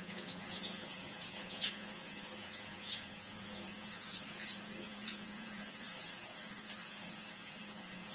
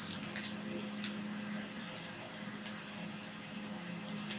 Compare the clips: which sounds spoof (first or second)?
first